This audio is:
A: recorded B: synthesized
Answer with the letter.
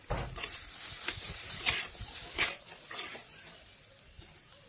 A